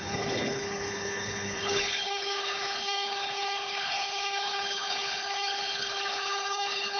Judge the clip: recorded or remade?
remade